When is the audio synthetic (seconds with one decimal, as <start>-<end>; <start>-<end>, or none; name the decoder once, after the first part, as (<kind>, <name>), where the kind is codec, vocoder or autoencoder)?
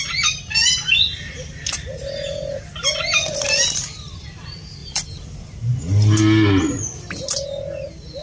none